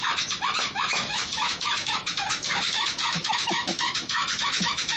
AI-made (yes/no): yes